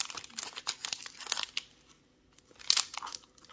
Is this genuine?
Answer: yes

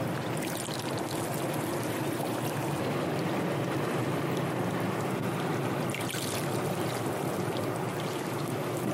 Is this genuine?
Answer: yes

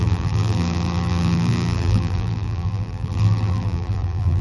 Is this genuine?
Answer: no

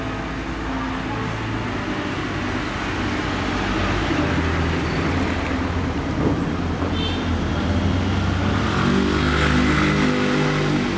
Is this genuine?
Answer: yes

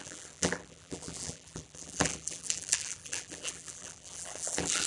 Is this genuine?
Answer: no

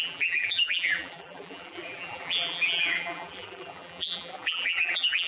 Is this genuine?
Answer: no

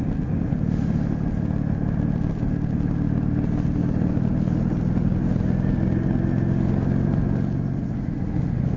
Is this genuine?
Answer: yes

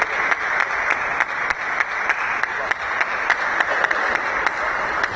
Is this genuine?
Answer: yes